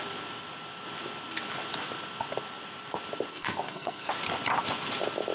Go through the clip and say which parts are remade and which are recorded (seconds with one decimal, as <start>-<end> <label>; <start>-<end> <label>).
0.0-3.3 recorded; 3.3-4.1 remade; 4.1-5.3 recorded